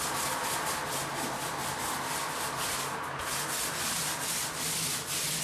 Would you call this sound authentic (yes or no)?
yes